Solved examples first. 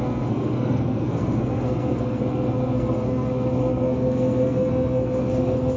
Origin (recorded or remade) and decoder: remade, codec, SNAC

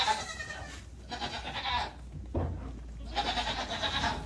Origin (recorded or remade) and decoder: recorded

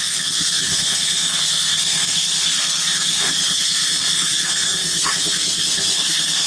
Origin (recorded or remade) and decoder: remade, codec, SNAC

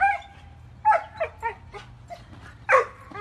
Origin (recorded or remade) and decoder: recorded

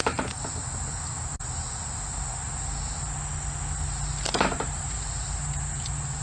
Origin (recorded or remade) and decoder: recorded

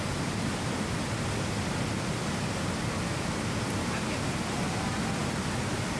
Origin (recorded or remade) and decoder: recorded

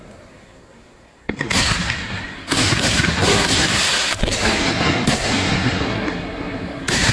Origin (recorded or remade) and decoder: remade, codec, SNAC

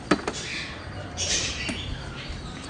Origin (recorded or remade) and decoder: recorded